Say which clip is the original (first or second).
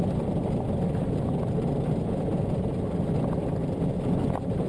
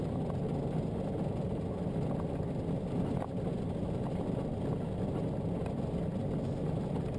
second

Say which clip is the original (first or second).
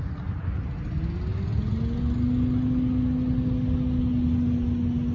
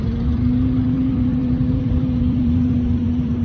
first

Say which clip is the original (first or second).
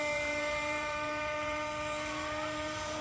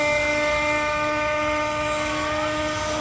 second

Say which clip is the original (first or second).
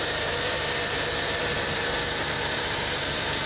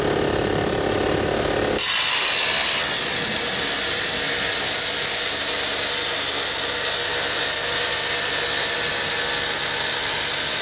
second